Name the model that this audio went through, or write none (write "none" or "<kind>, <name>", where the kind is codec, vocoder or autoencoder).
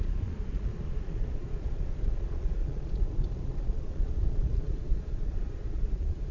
vocoder, Vocos